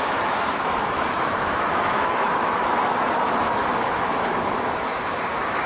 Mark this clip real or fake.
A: fake